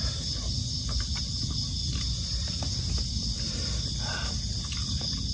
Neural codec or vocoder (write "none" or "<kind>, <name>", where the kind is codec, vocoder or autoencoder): none